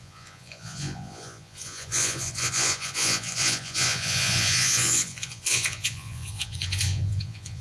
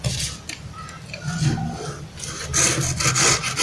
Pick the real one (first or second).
second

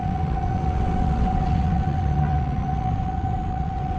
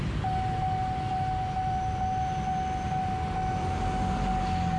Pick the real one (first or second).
second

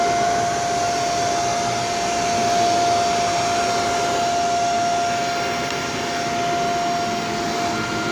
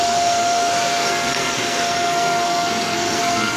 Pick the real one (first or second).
first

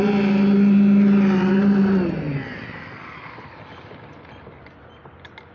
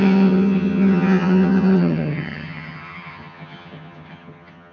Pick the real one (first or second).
first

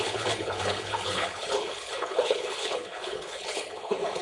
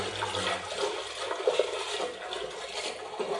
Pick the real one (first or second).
second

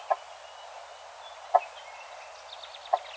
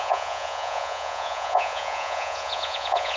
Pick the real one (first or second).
first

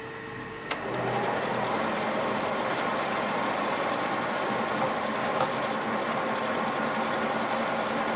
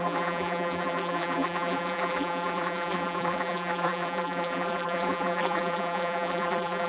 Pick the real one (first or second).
first